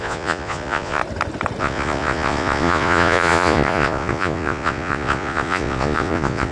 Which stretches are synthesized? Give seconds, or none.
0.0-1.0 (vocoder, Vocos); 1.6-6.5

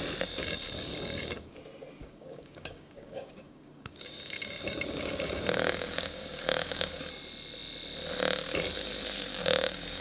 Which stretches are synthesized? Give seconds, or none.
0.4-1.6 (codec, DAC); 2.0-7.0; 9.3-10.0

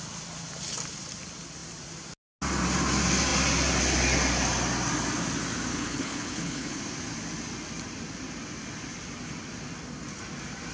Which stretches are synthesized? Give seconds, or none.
5.7-6.8 (codec, HILCodec)